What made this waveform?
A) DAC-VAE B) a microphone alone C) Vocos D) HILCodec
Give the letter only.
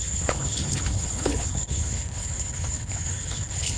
D